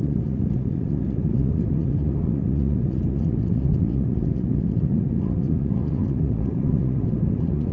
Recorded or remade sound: remade